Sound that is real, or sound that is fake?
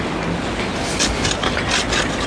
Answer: real